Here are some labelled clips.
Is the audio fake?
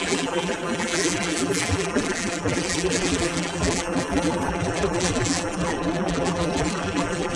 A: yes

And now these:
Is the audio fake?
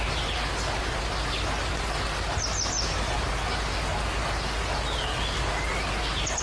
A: no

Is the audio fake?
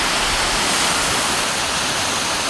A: no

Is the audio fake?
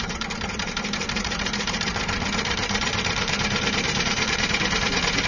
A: yes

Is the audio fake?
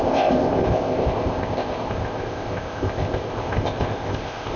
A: yes